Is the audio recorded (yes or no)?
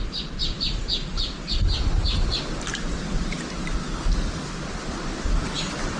yes